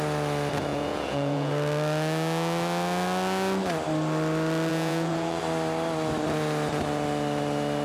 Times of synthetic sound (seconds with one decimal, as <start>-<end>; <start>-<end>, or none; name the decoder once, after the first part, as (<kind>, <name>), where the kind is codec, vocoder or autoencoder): 0.7-1.5 (vocoder, Vocos); 4.7-5.4